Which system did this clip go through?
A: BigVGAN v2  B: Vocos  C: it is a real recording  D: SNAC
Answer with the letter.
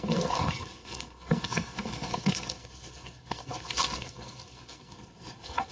D